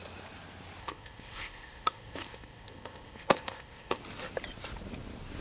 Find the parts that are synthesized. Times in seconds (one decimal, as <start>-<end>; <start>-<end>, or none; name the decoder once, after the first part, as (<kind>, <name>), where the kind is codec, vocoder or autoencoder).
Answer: 0.8-4.0 (codec, ZipCodec)